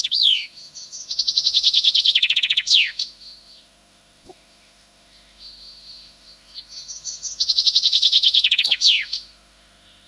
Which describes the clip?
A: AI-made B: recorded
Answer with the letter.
A